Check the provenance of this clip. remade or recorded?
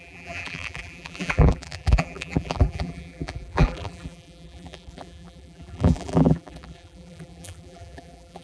remade